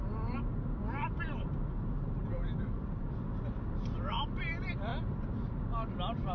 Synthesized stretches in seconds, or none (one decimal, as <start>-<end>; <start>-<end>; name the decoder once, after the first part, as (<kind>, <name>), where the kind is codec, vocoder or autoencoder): none